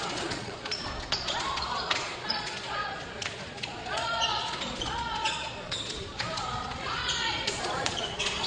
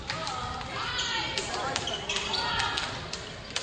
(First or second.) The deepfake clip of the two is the first